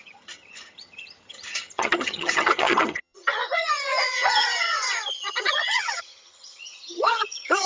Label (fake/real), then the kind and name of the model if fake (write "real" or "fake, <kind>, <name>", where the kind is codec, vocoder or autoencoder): fake, vocoder, HiFi-GAN